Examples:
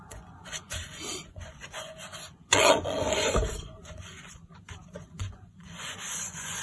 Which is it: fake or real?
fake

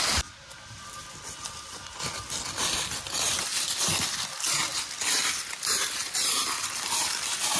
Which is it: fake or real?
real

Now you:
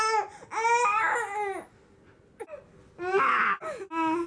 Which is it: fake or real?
real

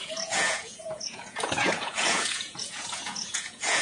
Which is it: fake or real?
fake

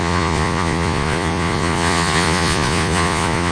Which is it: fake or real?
fake